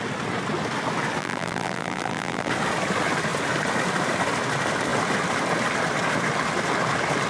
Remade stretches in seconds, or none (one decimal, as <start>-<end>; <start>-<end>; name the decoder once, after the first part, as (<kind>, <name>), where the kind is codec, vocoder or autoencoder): 1.2-2.5 (vocoder, BigVGAN v2)